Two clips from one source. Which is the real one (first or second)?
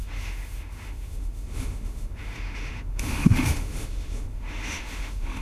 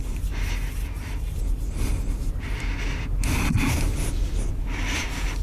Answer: second